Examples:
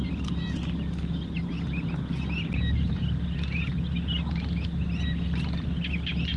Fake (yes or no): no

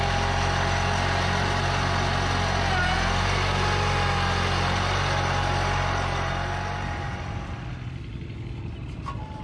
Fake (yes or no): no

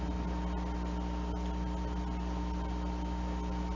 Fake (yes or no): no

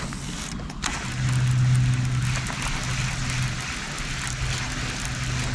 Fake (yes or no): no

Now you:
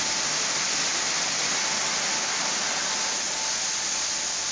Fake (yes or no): no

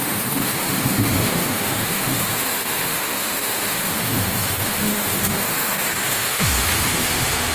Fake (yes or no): yes